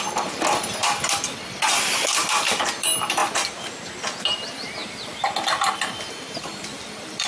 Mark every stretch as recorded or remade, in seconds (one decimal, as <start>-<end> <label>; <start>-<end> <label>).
0.0-3.2 remade; 3.2-4.2 recorded; 4.2-4.8 remade; 4.8-6.3 recorded; 6.3-7.3 remade